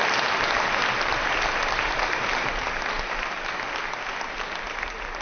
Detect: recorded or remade recorded